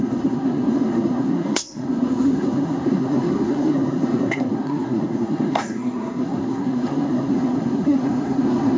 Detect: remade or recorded remade